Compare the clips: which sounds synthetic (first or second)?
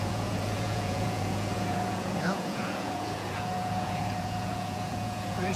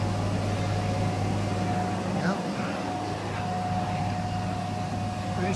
first